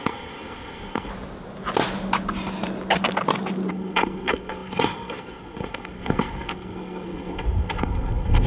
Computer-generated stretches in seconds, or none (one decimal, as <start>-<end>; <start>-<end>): 0.0-1.1; 3.7-8.5